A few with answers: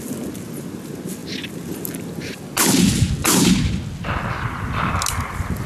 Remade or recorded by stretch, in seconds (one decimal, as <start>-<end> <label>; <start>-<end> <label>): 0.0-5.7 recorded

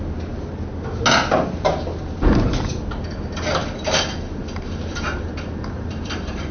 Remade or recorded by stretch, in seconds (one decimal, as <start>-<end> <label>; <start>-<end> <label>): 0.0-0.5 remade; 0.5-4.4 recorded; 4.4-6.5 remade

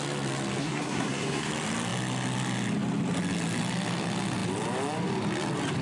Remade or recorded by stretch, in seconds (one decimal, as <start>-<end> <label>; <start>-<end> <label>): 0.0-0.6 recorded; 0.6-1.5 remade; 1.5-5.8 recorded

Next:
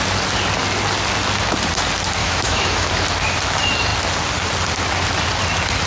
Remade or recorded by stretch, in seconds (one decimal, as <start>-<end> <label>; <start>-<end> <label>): 0.0-2.2 recorded; 2.2-2.9 remade; 2.9-5.9 recorded

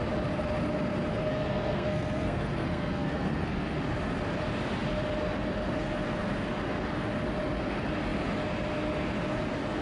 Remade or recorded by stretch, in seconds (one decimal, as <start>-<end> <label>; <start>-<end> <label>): 0.0-1.1 recorded; 1.1-3.8 remade; 3.8-9.8 recorded